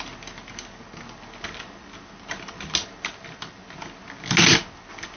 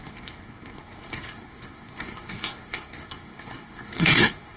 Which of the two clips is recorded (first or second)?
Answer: first